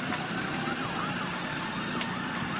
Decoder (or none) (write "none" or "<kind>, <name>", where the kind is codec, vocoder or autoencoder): none